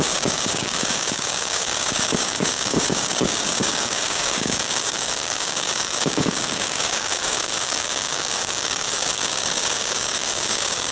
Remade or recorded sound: remade